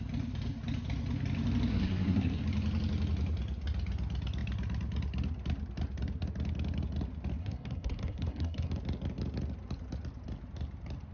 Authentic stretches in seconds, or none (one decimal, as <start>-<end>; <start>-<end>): 0.0-1.7; 2.4-7.4; 8.7-11.1